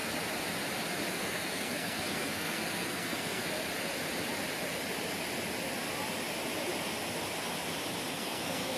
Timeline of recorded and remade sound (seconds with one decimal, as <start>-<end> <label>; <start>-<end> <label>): 0.0-1.1 recorded; 1.1-3.4 remade; 3.4-8.1 recorded; 8.1-8.8 remade